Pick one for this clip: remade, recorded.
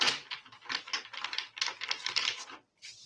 recorded